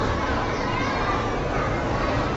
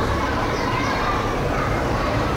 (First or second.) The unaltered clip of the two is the first